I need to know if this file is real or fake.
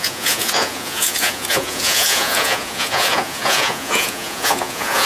fake